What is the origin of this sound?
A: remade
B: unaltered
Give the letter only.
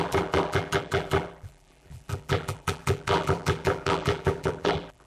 A